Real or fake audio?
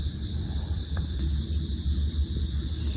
real